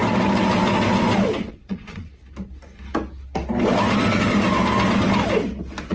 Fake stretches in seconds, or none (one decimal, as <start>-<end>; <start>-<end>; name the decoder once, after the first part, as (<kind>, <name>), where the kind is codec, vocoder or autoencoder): 1.5-2.1 (vocoder, Vocos)